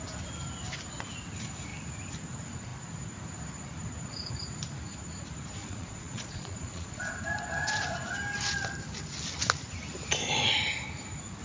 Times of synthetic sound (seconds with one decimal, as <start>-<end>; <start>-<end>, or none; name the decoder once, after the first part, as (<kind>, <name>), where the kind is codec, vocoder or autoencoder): 5.6-7.1 (vocoder, Vocos)